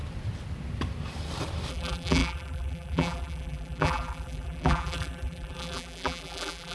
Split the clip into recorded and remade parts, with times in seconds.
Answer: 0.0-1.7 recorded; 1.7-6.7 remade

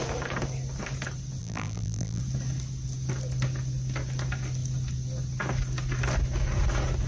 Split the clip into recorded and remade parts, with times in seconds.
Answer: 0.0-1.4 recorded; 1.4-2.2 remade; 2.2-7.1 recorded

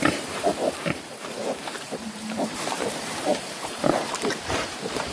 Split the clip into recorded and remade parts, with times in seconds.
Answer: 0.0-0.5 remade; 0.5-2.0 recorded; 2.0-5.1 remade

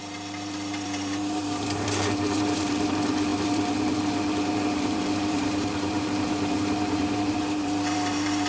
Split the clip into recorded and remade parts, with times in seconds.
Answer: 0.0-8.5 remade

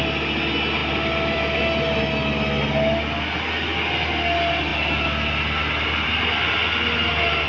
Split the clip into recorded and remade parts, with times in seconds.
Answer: 0.0-0.8 recorded; 0.8-1.6 remade; 1.6-4.7 recorded; 4.7-6.5 remade; 6.5-7.5 recorded

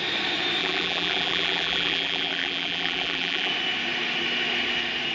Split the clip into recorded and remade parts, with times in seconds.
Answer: 0.0-0.6 recorded; 0.6-3.5 remade; 3.5-5.1 recorded